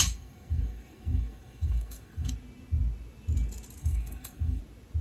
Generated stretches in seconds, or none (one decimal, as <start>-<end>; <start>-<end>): 0.0-2.3; 3.8-4.6